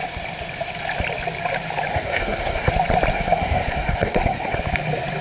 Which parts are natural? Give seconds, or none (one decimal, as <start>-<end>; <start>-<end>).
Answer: 0.0-1.9; 2.7-3.1; 4.6-5.2